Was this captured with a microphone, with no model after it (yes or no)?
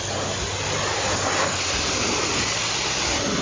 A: yes